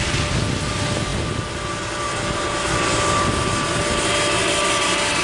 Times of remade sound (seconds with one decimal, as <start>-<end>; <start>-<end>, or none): none